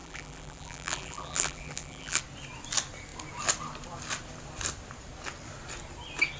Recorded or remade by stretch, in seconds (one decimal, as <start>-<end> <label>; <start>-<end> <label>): 0.0-2.2 remade; 2.2-6.4 recorded

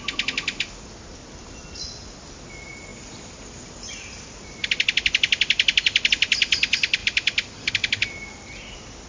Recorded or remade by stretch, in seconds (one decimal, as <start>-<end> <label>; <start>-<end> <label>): 0.0-2.9 recorded; 2.9-6.1 remade; 6.1-7.0 recorded; 7.0-7.7 remade; 7.7-9.1 recorded

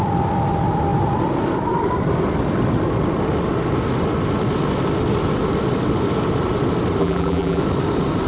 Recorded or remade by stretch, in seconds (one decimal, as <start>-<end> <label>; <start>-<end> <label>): 0.0-7.0 recorded; 7.0-7.6 remade; 7.6-8.3 recorded

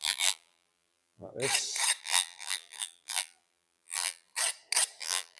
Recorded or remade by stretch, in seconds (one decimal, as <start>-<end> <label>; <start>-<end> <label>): 0.0-1.3 remade; 1.3-2.0 recorded; 2.0-4.3 remade; 4.3-5.0 recorded; 5.0-5.4 remade

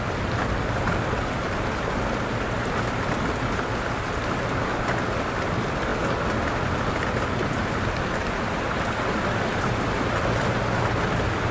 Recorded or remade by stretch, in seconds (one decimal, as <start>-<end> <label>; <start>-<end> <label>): 0.0-11.5 recorded

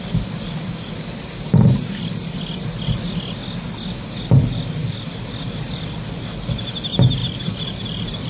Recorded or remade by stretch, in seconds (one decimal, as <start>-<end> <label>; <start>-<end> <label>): 0.0-3.4 remade; 3.4-4.2 recorded; 4.2-8.3 remade

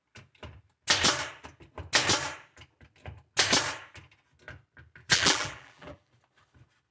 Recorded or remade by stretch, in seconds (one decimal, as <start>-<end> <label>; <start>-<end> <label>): 0.0-5.0 recorded; 5.0-6.1 remade; 6.1-6.9 recorded